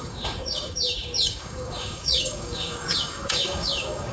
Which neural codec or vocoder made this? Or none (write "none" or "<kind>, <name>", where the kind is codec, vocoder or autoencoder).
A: codec, DAC